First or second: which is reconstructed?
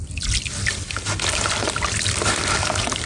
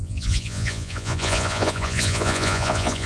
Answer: second